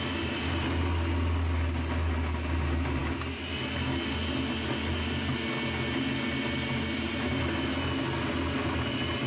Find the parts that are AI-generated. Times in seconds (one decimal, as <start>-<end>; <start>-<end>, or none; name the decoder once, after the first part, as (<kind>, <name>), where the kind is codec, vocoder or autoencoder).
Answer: none